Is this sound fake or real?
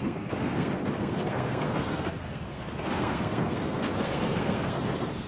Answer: fake